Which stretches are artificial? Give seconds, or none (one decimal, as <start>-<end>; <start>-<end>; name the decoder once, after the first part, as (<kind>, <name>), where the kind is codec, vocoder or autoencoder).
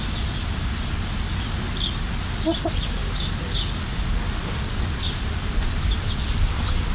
none